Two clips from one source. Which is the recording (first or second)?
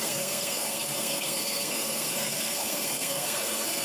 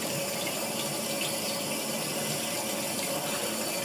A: second